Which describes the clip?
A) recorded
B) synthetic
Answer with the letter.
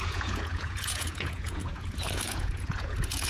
B